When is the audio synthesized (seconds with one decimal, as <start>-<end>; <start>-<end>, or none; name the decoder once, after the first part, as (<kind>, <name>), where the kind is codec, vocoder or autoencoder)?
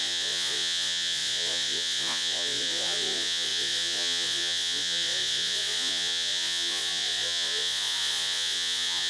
0.0-9.1 (vocoder, Vocos)